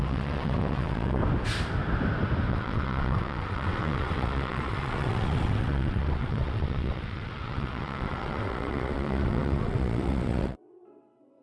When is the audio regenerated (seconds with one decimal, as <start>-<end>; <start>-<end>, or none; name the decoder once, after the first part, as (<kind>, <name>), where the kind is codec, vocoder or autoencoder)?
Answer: 0.0-1.2 (vocoder, WaveNeXt); 2.5-11.4